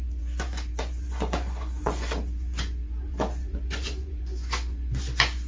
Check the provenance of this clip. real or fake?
fake